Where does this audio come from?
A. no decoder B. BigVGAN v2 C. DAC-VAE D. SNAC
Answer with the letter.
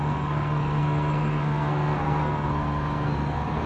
D